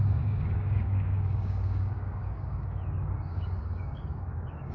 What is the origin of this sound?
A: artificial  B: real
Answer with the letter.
A